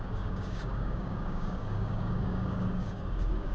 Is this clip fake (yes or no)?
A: yes